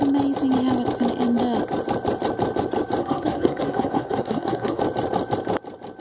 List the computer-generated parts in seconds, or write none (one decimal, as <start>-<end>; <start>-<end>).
3.0-4.8